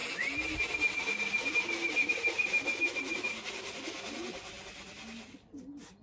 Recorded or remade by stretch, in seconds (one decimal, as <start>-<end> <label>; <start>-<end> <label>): 0.0-6.0 recorded